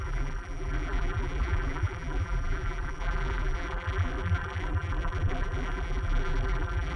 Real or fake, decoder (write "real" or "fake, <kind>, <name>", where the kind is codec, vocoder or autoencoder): fake, vocoder, BigVGAN v2